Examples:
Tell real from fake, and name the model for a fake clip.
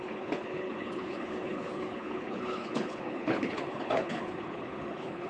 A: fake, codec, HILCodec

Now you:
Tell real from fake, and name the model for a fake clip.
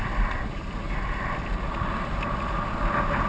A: real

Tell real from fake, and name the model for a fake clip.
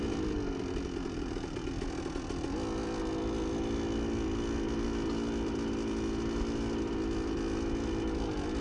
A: real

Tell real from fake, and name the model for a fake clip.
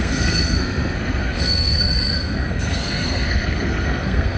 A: fake, codec, SNAC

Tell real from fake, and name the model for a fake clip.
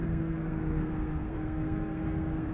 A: fake, codec, SNAC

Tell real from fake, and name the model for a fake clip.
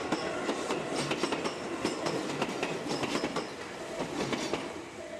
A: real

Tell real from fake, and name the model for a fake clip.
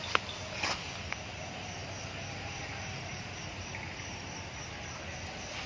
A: real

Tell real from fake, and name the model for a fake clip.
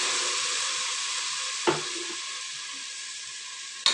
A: real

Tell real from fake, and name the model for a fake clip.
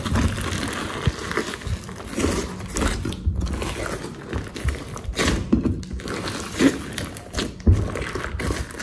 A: real